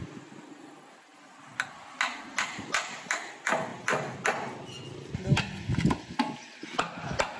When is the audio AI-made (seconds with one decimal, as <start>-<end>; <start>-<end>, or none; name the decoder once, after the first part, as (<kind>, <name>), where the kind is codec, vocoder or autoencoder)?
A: none